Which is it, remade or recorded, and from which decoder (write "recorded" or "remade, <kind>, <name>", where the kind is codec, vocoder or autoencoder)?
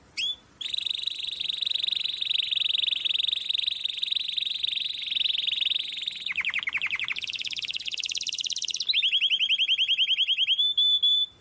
recorded